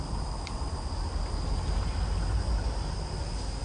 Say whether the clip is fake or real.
real